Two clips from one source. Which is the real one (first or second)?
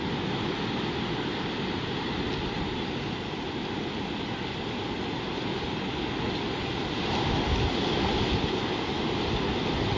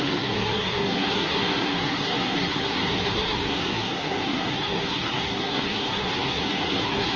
first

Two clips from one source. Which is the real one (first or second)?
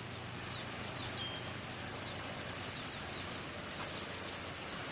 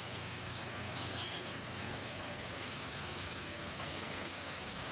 first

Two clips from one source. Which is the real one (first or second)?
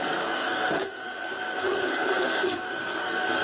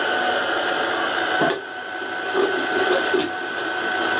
second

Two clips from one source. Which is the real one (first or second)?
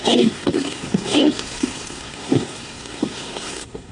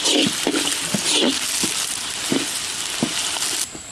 second